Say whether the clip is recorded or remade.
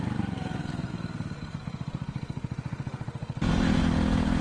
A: recorded